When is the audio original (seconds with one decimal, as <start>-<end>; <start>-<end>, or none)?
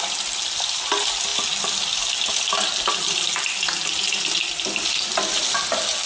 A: 0.0-6.1